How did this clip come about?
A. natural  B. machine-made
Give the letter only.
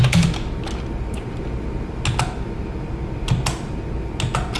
A